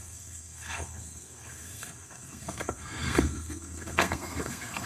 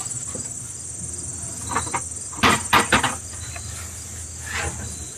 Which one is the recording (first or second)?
second